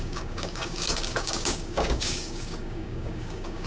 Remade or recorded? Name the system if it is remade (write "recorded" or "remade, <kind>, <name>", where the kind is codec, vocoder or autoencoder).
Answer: remade, codec, DAC